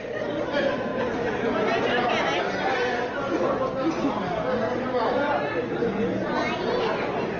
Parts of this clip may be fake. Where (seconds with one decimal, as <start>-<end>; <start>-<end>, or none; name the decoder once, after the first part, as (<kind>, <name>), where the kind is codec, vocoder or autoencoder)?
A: none